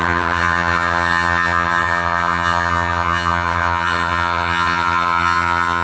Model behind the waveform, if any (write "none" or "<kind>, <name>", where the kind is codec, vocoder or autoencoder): vocoder, HiFi-GAN